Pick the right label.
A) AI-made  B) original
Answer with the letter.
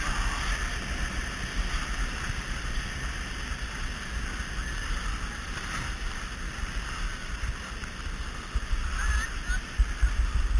B